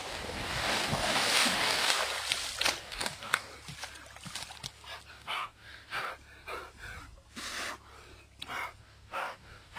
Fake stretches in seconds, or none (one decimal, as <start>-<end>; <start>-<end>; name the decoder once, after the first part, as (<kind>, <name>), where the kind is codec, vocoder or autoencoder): 0.0-2.0 (codec, DAC); 2.8-3.5; 5.1-6.1; 8.8-9.8